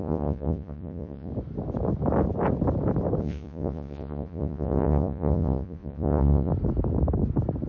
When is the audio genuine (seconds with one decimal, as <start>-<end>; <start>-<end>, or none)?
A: 1.3-3.2; 6.5-7.7